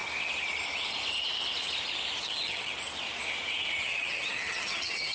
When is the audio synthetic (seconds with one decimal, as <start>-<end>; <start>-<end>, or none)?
2.2-2.7; 3.8-5.1